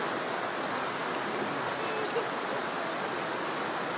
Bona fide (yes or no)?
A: yes